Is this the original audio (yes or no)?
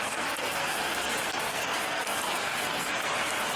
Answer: no